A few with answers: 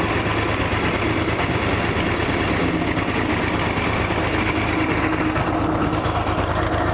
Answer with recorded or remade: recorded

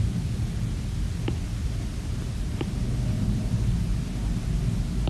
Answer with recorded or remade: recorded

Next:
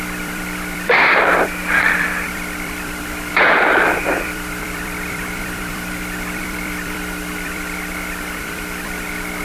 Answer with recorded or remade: remade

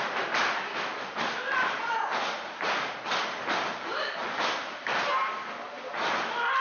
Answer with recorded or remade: recorded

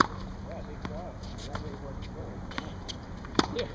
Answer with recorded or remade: remade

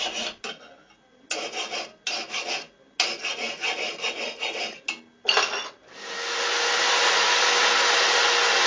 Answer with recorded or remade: recorded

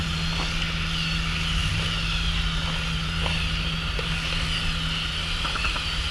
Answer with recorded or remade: recorded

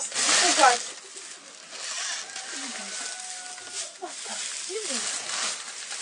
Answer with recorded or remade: recorded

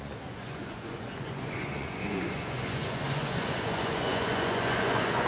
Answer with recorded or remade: remade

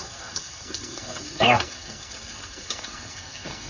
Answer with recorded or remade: remade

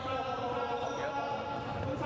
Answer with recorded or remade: recorded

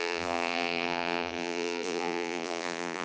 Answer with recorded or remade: remade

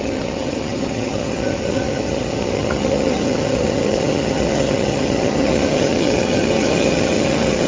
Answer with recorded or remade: remade